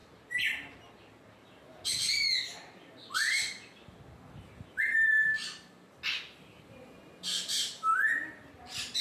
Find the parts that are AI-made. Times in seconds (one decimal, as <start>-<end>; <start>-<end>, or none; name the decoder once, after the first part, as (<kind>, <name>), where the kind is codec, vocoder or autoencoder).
none